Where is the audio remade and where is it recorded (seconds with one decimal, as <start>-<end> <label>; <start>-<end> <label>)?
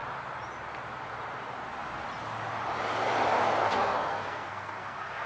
0.0-3.6 recorded; 3.6-5.3 remade